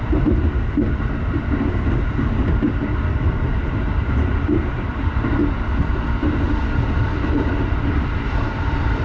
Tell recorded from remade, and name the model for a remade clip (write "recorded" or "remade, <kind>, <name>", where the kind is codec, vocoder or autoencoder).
remade, vocoder, BigVGAN v2